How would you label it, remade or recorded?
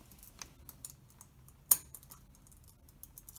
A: recorded